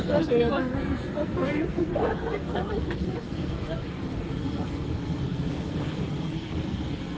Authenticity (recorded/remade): remade